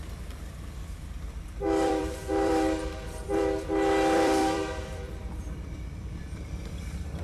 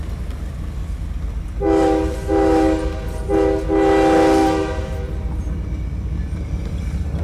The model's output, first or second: first